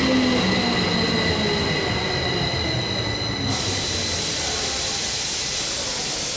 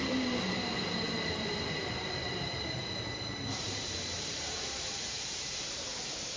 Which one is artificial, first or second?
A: second